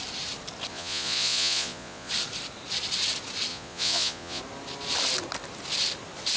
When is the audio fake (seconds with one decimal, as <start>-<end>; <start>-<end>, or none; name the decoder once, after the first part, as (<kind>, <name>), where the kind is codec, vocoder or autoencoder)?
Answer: 0.7-2.1 (vocoder, Vocos); 3.5-4.4